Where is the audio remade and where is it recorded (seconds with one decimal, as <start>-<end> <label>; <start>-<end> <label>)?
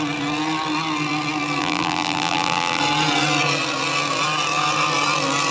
0.0-1.6 recorded; 1.6-2.8 remade; 2.8-5.5 recorded